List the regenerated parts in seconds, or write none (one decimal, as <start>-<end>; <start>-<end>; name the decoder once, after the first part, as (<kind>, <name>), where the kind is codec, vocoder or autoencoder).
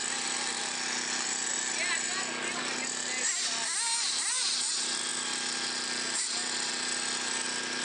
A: none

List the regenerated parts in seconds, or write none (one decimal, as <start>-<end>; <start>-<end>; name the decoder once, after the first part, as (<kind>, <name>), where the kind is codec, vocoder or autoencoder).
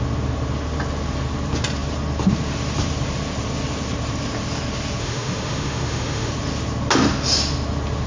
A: 5.0-6.3 (autoencoder, DAC-VAE)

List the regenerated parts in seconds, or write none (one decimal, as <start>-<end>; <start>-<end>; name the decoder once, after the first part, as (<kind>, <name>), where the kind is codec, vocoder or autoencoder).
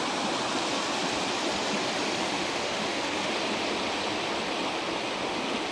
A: 2.3-3.3 (autoencoder, DAC-VAE)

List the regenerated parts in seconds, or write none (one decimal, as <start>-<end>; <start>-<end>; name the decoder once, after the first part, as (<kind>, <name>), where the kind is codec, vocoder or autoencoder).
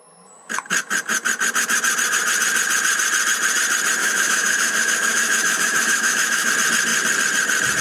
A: 4.0-6.5 (autoencoder, DAC-VAE)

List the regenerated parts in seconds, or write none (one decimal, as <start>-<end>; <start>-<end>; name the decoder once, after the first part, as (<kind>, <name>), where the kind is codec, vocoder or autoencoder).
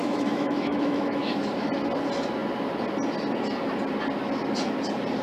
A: 0.0-1.3 (autoencoder, DAC-VAE)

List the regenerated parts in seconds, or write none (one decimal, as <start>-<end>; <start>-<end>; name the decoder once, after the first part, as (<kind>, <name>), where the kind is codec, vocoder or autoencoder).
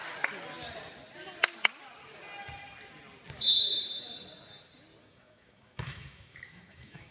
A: 5.0-7.1 (autoencoder, DAC-VAE)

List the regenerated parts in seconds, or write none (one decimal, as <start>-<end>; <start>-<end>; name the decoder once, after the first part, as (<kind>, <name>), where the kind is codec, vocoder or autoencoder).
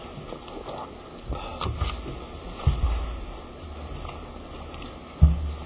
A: none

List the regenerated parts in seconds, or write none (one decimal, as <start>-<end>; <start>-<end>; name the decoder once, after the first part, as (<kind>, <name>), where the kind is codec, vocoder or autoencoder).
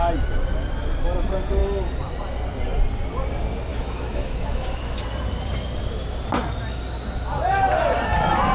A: 3.7-5.0 (autoencoder, DAC-VAE)